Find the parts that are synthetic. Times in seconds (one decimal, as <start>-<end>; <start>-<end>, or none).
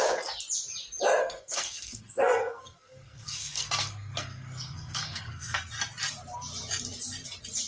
1.2-5.7